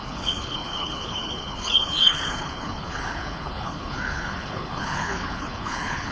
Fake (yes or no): yes